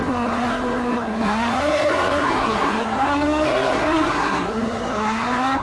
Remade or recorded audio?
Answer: remade